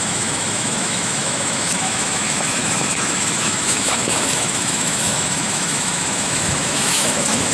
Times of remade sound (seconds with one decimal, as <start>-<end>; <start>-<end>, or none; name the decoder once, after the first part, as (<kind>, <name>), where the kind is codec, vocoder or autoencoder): 0.0-7.5 (autoencoder, DAC-VAE)